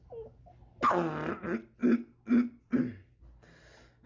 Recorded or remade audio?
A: recorded